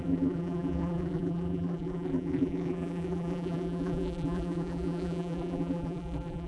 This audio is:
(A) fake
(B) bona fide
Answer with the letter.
A